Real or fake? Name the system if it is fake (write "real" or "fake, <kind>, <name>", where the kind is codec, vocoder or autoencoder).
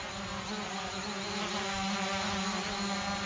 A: real